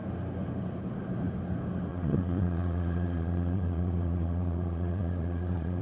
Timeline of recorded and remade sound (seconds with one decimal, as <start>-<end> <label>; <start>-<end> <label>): 0.0-1.9 recorded; 1.9-5.8 remade